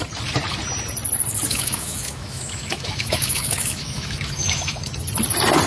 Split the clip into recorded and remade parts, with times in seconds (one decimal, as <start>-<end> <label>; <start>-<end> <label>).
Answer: 0.0-1.5 recorded; 1.5-4.9 remade; 4.9-5.7 recorded